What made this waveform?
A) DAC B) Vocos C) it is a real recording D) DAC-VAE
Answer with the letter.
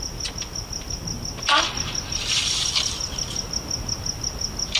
C